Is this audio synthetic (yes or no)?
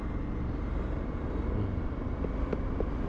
no